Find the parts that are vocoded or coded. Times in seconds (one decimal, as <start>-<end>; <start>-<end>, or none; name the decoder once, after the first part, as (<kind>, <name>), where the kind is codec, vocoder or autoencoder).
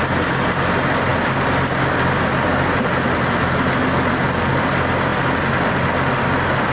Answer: none